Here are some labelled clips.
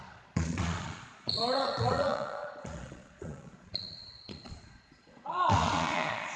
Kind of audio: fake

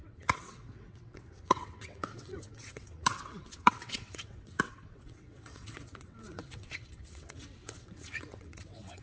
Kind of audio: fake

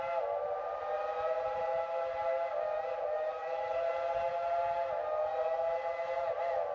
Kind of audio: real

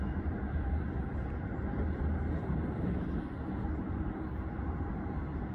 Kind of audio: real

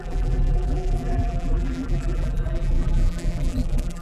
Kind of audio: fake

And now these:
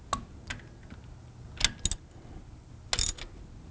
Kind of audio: real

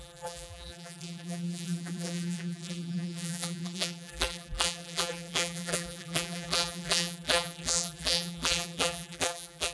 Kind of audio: fake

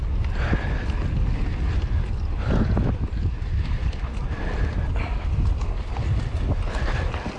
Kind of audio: real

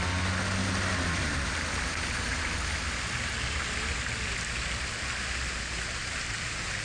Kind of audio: fake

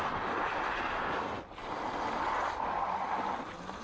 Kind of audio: real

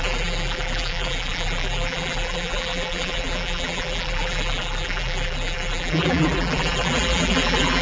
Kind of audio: fake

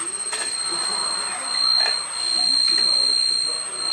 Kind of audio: real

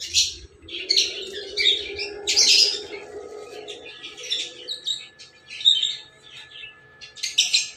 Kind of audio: real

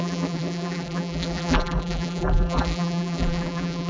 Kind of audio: fake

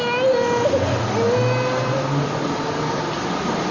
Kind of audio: real